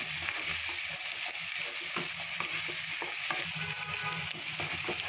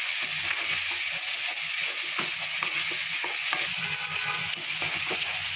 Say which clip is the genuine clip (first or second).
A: first